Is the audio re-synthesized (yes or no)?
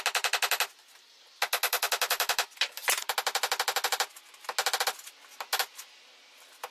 no